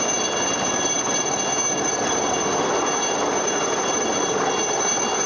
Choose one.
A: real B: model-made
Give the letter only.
A